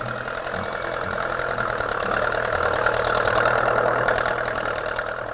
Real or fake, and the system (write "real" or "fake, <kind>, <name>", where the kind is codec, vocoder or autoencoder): real